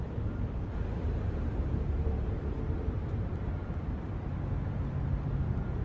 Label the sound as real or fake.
fake